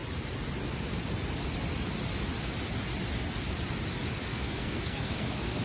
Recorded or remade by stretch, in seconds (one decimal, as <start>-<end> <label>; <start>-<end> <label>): 0.0-4.3 recorded; 4.3-5.6 remade